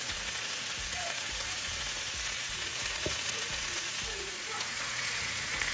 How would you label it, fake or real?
fake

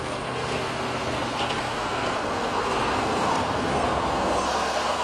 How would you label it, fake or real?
fake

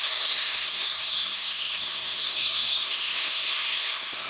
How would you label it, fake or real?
fake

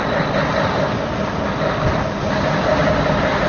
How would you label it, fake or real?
real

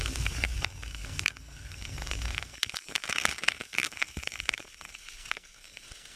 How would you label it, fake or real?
fake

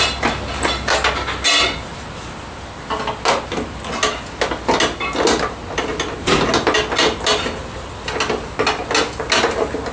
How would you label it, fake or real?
real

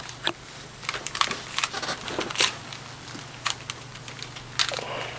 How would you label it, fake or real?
real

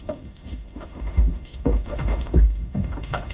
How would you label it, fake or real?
fake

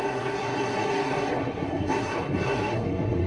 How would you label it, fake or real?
fake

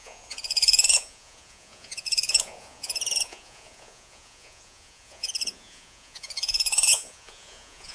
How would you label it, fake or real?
fake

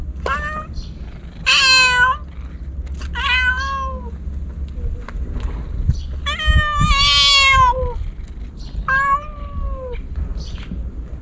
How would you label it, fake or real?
real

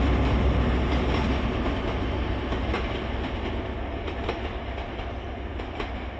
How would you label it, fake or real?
real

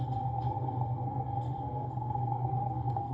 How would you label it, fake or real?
fake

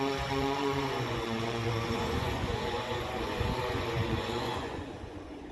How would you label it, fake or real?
fake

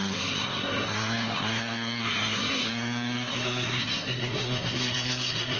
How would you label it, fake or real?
fake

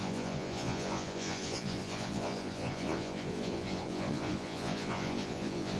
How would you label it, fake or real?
fake